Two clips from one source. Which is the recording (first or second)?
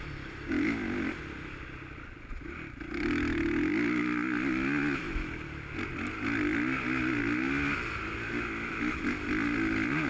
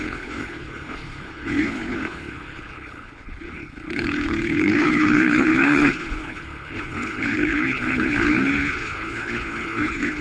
first